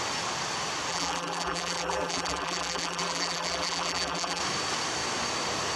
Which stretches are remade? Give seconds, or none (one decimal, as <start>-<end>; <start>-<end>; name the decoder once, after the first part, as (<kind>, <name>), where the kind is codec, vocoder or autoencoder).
0.9-4.4 (vocoder, BigVGAN v2)